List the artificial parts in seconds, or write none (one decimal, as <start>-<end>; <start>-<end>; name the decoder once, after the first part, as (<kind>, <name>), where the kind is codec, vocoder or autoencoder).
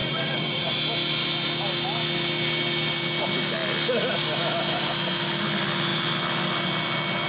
0.0-0.7 (vocoder, WaveNeXt)